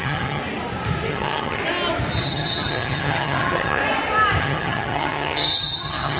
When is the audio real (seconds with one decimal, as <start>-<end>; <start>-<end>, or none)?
0.4-1.1; 1.6-2.2; 3.8-4.4